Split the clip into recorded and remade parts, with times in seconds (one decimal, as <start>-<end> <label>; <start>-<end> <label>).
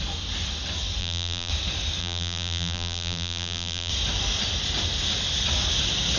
0.0-1.0 recorded; 1.0-1.5 remade; 1.5-2.0 recorded; 2.0-3.9 remade; 3.9-6.2 recorded